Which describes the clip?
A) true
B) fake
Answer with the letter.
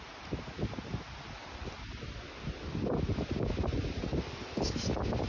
A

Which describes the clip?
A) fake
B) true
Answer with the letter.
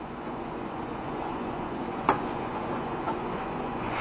A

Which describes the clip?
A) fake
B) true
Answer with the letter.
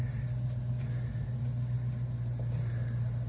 B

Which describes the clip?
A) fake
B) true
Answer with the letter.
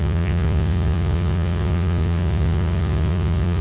A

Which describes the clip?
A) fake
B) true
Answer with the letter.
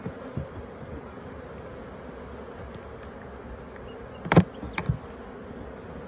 B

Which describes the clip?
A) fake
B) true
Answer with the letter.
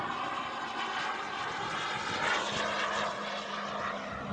B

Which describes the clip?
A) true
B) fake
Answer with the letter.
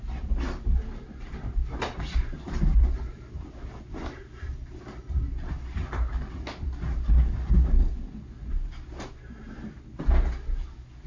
A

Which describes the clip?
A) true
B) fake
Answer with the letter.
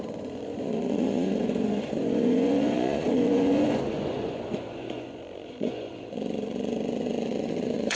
B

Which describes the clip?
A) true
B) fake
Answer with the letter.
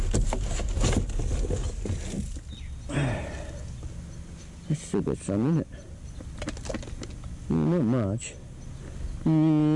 A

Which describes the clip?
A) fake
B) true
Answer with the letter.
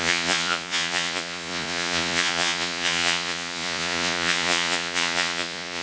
A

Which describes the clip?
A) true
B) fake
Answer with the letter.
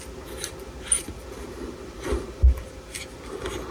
A